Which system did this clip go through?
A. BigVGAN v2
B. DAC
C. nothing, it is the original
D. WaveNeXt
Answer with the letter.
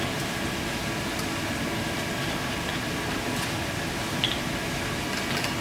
C